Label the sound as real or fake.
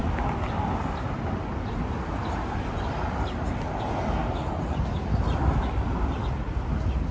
real